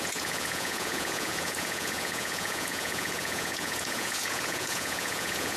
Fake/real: fake